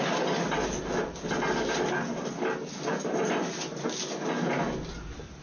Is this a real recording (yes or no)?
yes